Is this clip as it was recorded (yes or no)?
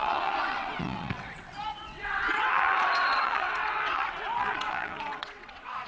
no